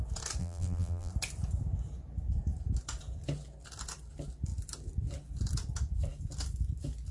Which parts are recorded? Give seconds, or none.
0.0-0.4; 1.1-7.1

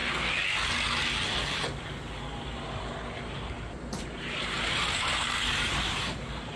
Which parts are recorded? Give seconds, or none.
0.0-4.0

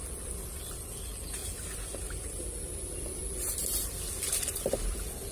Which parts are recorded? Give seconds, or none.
0.0-5.3